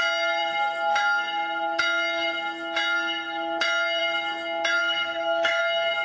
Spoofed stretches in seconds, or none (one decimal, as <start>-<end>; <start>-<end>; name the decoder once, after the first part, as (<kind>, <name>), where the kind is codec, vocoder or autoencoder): 4.8-5.6 (autoencoder, DAC-VAE)

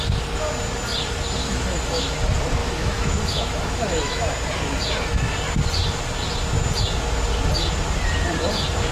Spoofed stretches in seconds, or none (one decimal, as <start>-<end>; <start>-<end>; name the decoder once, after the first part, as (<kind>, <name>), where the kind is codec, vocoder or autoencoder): 1.4-2.1 (autoencoder, DAC-VAE); 2.6-4.2

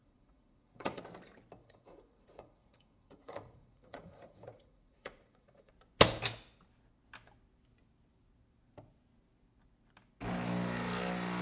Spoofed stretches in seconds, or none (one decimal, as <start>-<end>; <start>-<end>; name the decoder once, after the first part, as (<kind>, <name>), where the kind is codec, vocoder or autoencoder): 0.0-1.0 (vocoder, Vocos); 1.6-5.7

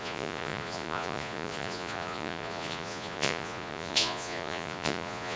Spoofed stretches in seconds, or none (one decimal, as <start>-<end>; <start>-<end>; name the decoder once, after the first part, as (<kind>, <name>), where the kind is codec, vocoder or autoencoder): 0.0-5.4 (vocoder, Vocos)

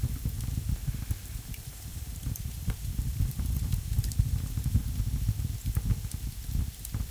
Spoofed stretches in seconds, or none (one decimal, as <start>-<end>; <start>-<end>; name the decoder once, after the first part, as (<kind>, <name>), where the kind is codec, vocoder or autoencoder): 1.2-4.8 (vocoder, BigVGAN v2)

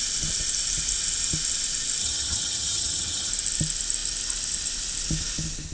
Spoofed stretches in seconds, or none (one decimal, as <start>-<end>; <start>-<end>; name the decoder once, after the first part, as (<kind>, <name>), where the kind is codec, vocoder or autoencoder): 2.0-3.3 (vocoder, HiFi-GAN)

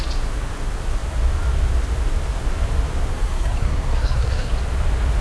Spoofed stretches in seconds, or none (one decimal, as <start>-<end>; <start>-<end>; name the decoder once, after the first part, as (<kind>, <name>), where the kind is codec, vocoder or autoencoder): 3.1-4.5 (codec, SNAC)

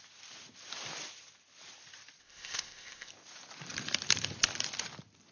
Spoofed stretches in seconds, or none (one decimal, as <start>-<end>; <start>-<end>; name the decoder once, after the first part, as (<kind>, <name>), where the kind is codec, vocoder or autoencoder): 2.2-3.1 (codec, ZipCodec)